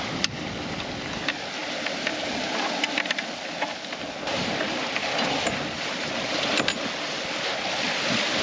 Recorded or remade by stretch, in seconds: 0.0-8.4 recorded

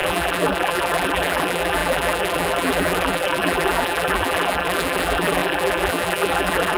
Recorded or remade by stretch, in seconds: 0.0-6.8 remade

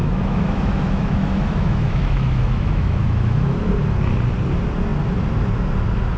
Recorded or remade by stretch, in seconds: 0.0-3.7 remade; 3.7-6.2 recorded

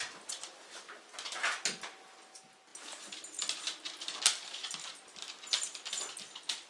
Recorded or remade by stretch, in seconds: 0.0-6.7 recorded